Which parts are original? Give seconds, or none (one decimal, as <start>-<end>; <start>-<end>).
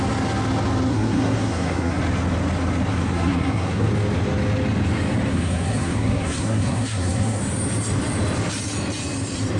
0.0-0.9; 2.0-2.9; 3.9-5.3; 7.4-9.6